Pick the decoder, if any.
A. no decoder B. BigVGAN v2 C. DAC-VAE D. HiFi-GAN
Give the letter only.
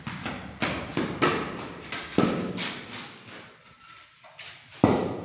A